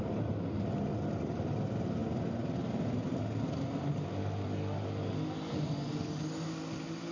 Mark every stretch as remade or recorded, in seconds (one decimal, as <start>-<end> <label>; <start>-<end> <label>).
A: 0.0-7.1 recorded